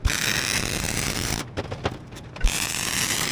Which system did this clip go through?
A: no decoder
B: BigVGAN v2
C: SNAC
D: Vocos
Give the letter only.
A